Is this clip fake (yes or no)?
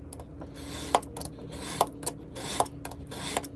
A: no